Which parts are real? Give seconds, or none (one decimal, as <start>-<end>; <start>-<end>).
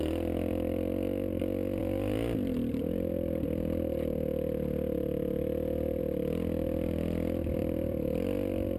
0.0-7.6